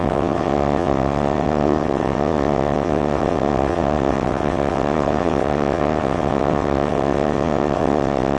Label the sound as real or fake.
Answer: fake